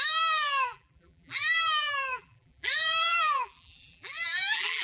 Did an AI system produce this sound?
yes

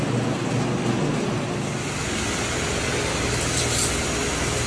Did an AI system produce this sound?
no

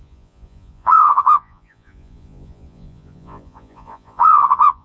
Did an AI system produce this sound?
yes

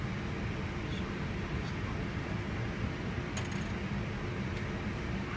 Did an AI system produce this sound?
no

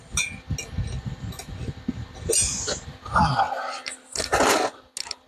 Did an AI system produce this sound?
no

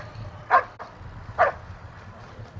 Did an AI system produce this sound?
no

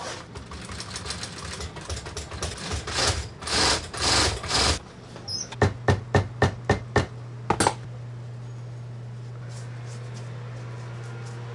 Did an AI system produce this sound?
no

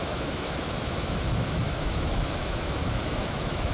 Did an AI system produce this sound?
yes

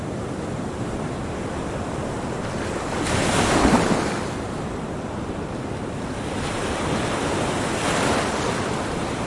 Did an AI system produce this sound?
yes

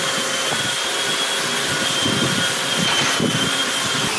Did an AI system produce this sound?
no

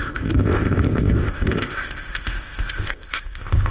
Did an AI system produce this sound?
yes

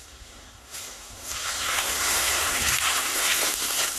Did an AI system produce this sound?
yes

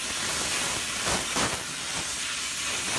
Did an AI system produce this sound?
yes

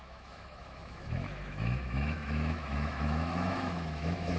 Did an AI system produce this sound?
yes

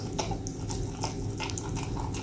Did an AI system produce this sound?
no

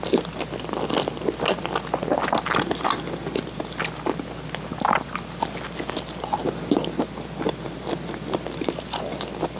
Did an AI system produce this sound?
no